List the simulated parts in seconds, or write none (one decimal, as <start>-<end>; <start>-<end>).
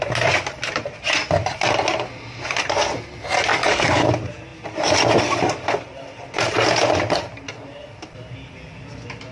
3.5-4.1